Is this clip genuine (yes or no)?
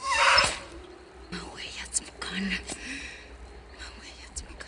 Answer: yes